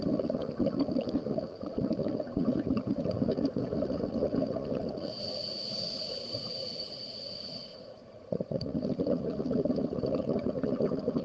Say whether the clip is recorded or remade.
remade